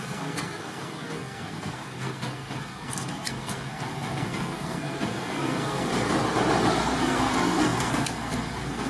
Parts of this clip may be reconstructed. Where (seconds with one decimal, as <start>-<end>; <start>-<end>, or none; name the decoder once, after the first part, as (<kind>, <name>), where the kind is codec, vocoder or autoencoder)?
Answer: 0.0-5.9 (codec, SNAC); 7.0-8.9